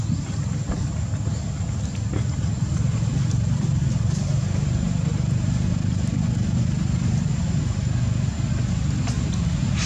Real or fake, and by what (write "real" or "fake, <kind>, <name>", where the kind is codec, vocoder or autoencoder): real